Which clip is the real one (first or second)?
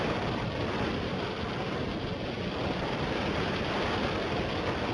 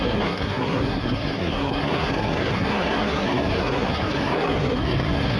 first